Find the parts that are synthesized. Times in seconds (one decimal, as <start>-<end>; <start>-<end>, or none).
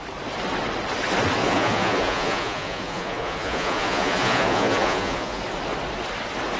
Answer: 1.4-5.4